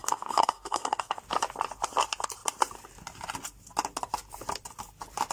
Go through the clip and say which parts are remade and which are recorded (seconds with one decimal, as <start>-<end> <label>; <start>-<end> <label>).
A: 0.0-1.2 remade; 1.2-5.3 recorded